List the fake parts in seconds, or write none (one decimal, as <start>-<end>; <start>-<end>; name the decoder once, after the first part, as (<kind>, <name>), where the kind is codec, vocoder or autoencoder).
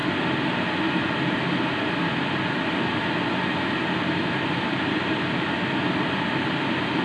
none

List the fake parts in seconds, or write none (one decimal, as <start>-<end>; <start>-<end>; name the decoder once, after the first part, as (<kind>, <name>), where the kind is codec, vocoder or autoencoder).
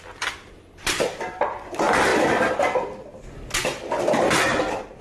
0.4-1.7 (vocoder, BigVGAN v2); 2.1-2.6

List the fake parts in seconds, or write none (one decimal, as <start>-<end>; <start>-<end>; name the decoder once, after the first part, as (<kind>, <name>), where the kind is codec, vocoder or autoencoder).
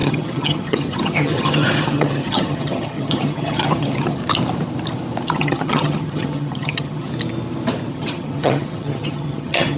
0.0-4.2 (vocoder, HiFi-GAN); 5.3-7.1; 7.9-9.8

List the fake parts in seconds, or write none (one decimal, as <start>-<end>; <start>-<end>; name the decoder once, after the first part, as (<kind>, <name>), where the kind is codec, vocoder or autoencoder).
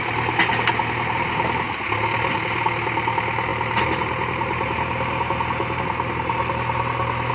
none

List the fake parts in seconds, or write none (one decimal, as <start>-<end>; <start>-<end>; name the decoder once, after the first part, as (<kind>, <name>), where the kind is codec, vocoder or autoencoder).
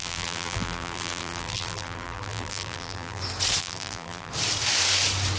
0.0-3.2 (vocoder, BigVGAN v2); 3.6-4.3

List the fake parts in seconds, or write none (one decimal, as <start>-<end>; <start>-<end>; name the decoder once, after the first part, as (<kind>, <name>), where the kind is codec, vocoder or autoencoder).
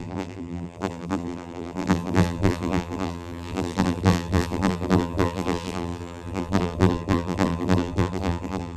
0.0-8.8 (vocoder, BigVGAN v2)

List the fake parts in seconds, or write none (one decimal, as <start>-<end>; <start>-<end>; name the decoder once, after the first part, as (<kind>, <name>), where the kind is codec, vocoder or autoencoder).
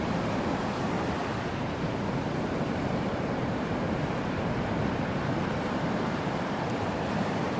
0.0-1.2 (vocoder, BigVGAN v2); 2.0-7.6